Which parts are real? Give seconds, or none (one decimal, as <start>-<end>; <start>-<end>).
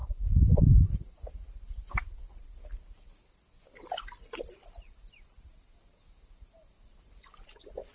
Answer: 0.0-7.9